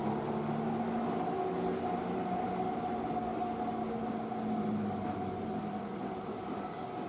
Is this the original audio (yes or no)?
yes